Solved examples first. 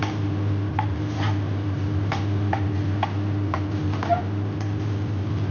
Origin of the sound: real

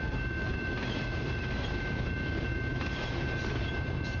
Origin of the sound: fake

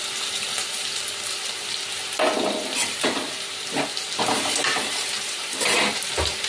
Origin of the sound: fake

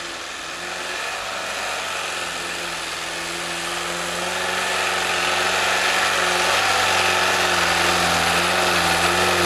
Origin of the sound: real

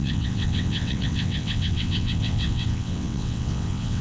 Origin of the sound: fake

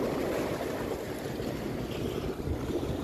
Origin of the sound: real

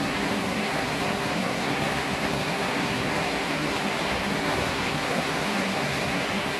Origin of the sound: fake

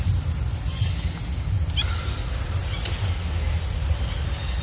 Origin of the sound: real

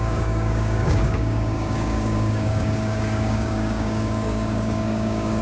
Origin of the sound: fake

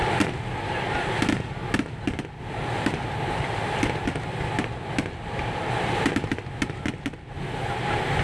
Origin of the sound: real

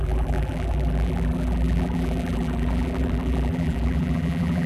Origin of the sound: fake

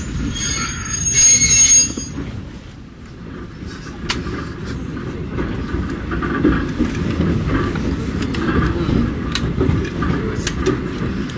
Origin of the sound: real